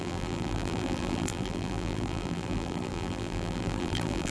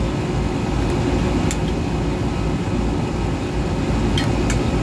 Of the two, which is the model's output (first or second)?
first